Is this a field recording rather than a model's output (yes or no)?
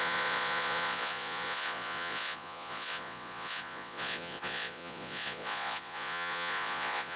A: no